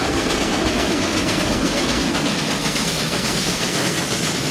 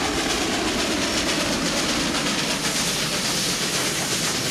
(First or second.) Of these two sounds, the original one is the second